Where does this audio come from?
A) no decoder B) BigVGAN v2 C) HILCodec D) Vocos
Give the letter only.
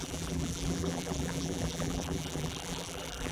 B